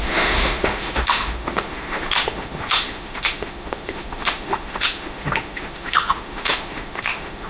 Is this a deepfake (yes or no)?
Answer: yes